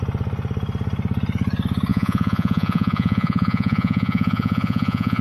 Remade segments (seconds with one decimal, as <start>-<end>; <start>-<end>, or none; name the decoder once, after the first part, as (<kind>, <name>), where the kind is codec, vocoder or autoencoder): 1.9-5.2 (vocoder, Vocos)

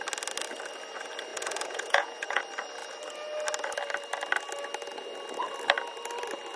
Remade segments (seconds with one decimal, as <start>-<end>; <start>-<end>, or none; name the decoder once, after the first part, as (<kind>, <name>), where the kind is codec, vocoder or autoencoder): 1.3-2.4 (vocoder, Vocos)

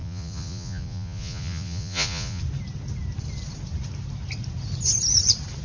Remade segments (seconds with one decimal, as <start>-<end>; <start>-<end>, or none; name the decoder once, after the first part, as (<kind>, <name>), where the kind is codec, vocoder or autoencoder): 0.0-2.4 (vocoder, Vocos)